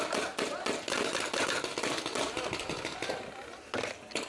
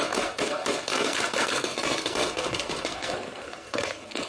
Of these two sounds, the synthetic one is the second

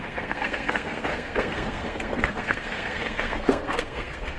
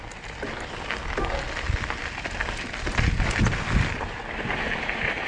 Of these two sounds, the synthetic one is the first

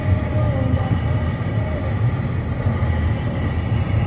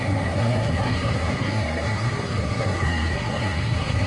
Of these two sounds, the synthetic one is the second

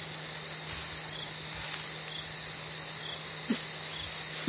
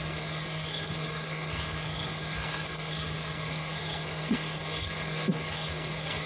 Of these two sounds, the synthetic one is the second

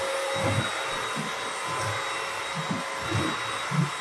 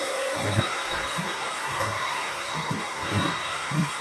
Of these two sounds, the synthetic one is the second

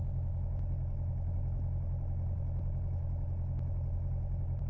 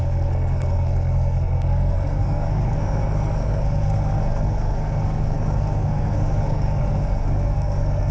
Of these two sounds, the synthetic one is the second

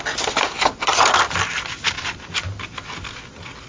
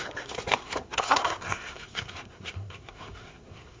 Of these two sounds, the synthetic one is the second